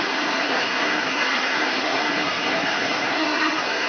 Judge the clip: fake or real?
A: fake